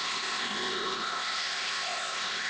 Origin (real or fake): fake